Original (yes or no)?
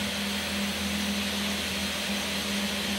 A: yes